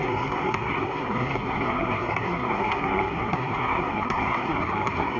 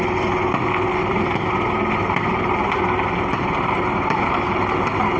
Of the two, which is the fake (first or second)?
first